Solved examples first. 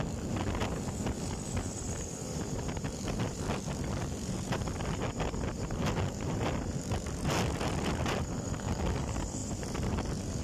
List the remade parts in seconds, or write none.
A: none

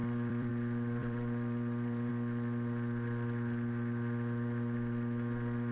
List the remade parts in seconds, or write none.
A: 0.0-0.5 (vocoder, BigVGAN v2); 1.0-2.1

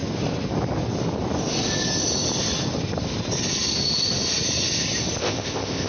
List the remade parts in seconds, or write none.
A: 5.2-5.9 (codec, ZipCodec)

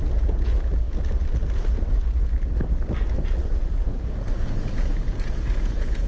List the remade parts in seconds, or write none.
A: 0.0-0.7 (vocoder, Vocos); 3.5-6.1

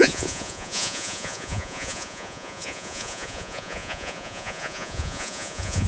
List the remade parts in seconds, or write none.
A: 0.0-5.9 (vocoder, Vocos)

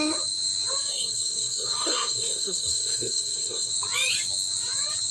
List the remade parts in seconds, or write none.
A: 0.9-3.7 (codec, SNAC)

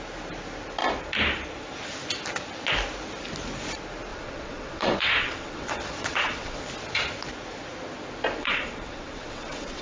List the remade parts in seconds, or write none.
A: 4.1-6.6 (vocoder, WaveNeXt); 8.4-9.8

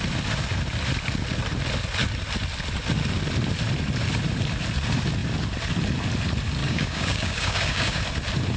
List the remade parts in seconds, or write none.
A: 6.6-8.0 (codec, DAC)